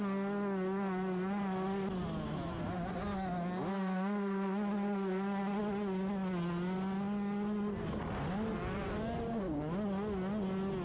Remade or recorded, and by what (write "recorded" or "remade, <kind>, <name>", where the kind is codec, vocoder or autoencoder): recorded